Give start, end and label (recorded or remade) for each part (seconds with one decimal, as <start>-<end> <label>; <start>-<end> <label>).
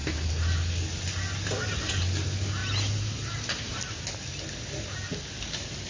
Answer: 0.0-5.9 recorded